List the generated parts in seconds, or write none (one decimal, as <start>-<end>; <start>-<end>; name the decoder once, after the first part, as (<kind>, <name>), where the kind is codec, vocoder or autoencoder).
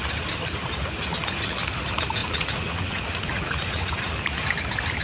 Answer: 2.2-3.9 (vocoder, Vocos)